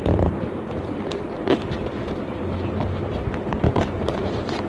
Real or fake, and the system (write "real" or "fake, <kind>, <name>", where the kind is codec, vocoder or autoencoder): fake, vocoder, BigVGAN v2